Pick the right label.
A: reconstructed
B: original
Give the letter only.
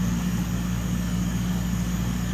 A